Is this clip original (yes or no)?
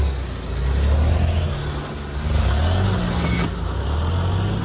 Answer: yes